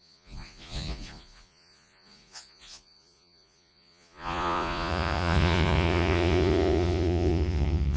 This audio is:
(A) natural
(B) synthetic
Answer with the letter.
B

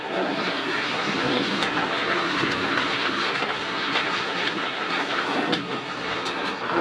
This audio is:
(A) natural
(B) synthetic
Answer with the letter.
B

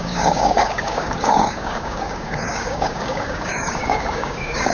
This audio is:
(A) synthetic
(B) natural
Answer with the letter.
A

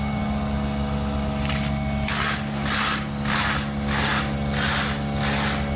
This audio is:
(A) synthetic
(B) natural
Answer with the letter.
B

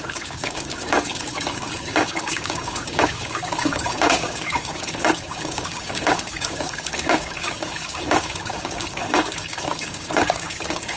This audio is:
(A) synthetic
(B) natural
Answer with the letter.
A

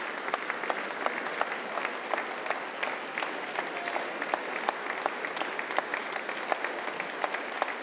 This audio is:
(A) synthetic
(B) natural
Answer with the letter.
B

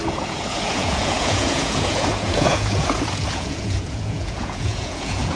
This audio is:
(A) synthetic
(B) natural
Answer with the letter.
A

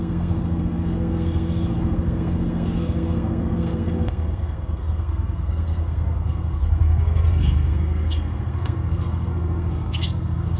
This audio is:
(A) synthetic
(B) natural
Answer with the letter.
A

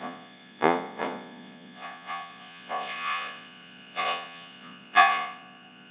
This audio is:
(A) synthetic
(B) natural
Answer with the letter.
A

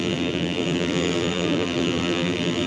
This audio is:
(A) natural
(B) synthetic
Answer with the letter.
B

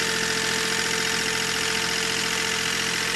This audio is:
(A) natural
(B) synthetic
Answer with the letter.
A